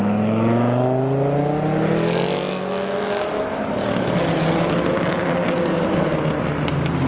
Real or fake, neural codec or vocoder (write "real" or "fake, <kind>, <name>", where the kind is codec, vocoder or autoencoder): real